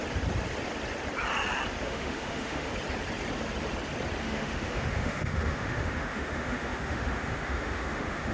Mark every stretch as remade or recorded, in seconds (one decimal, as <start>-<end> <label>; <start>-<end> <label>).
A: 0.0-1.8 recorded; 1.8-2.7 remade; 2.7-4.2 recorded; 4.2-8.3 remade